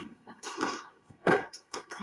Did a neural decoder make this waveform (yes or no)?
yes